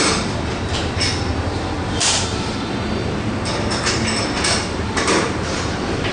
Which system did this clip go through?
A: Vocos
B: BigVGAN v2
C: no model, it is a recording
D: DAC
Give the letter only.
B